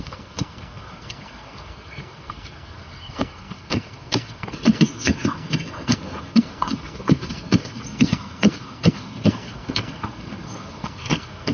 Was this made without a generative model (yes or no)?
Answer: no